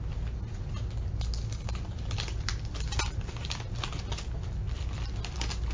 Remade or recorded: recorded